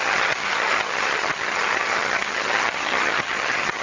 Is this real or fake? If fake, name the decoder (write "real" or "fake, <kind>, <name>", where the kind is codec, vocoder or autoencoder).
fake, vocoder, HiFi-GAN